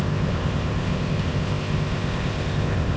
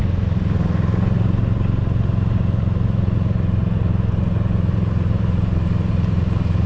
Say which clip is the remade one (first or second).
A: first